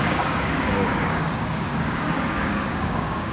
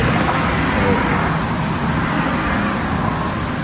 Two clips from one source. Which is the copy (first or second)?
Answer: first